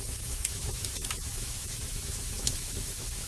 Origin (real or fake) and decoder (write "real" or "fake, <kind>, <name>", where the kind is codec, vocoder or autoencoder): fake, autoencoder, DAC-VAE